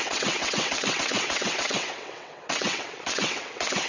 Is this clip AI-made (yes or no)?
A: yes